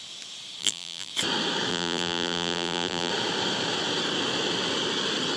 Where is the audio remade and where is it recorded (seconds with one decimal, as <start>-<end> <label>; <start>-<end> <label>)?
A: 0.0-0.6 recorded; 0.6-1.1 remade; 1.1-1.7 recorded; 1.7-3.1 remade; 3.1-5.4 recorded

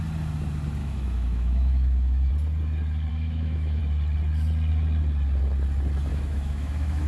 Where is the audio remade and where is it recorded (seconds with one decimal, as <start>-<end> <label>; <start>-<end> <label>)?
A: 0.0-0.8 recorded; 0.8-2.3 remade; 2.3-3.1 recorded; 3.1-3.8 remade; 3.8-6.1 recorded; 6.1-7.1 remade